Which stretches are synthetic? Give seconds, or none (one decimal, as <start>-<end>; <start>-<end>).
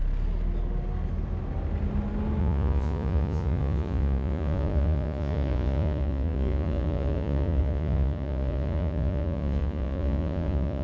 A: 2.4-10.8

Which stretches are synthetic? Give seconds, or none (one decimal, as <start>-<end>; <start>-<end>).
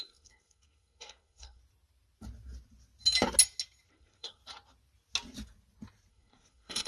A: 0.0-1.6; 3.9-4.4; 6.1-6.9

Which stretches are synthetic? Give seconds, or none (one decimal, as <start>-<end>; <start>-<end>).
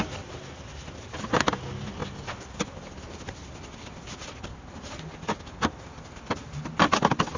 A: none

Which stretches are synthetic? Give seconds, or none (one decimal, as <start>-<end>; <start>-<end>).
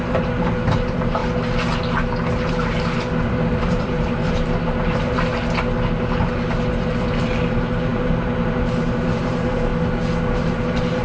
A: 0.0-1.2; 2.5-5.3; 6.7-9.7; 10.3-11.0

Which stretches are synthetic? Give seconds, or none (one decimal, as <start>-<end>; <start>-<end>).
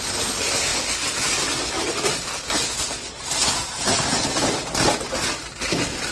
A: none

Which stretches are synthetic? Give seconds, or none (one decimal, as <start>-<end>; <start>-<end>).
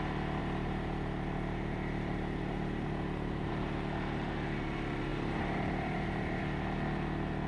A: 0.4-3.5; 5.1-6.4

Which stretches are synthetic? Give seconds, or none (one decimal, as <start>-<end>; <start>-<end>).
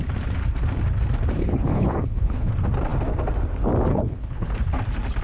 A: 1.4-2.5; 3.9-4.5